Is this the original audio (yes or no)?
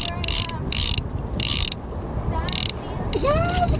yes